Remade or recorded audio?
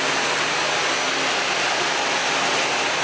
recorded